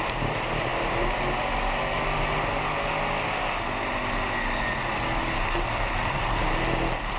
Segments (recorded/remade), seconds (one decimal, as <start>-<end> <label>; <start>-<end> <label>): 0.0-7.2 recorded